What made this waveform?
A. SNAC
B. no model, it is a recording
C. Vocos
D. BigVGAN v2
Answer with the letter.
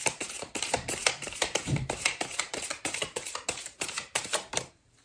D